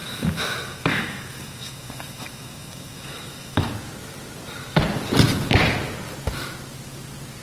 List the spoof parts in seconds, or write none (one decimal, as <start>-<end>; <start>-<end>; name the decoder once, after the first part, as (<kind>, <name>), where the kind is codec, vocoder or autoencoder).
0.0-3.7 (autoencoder, DAC-VAE)